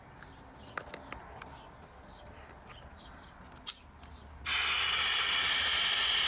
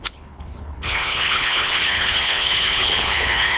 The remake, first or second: second